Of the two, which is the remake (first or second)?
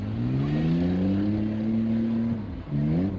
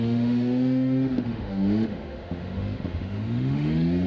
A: second